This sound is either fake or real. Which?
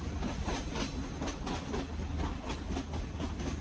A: real